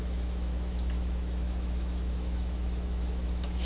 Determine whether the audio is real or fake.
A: fake